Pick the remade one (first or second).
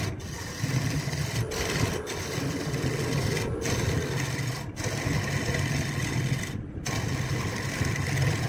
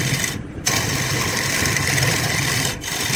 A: second